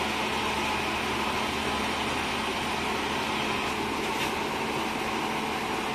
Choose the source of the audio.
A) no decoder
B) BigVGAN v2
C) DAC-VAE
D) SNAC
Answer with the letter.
A